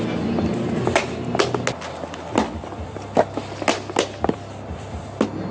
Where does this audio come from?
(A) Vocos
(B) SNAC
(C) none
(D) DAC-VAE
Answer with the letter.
C